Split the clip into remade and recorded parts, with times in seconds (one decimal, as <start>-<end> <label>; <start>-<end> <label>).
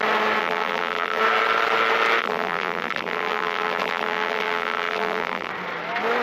0.0-0.4 recorded; 0.4-1.2 remade; 1.2-2.2 recorded; 2.2-5.5 remade; 5.5-6.2 recorded